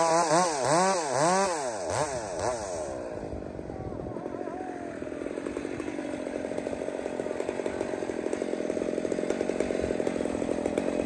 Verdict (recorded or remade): recorded